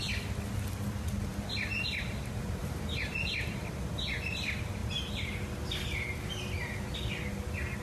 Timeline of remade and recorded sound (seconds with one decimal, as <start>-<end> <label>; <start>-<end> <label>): 0.0-2.6 recorded; 2.6-3.3 remade; 3.3-7.8 recorded